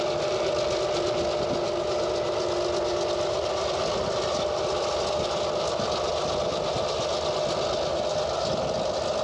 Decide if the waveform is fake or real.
real